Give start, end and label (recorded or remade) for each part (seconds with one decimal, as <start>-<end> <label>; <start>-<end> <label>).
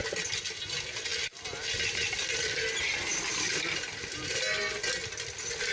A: 0.0-5.7 recorded